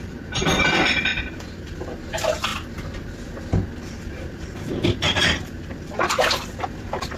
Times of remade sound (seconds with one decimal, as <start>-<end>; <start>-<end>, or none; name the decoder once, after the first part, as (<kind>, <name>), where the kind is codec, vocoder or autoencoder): 0.0-2.5 (vocoder, BigVGAN v2); 3.8-7.2